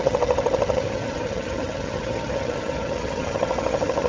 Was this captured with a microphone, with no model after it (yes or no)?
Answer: no